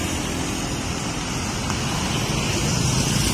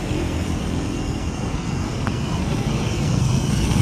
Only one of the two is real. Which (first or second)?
first